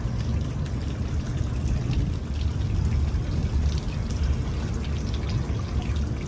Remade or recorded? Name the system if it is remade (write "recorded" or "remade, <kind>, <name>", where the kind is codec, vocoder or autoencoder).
recorded